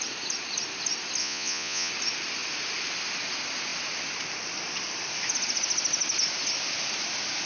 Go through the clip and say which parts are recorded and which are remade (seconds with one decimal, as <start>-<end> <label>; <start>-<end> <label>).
0.0-1.2 recorded; 1.2-1.9 remade; 1.9-7.5 recorded